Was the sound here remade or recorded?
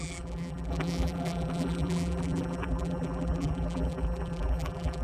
remade